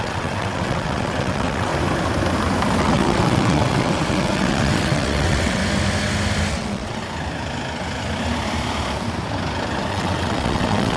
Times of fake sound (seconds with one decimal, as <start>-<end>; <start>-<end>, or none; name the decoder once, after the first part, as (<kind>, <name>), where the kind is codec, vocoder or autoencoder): 0.0-1.7 (vocoder, WaveNeXt); 2.8-5.6; 6.5-7.0; 9.9-11.0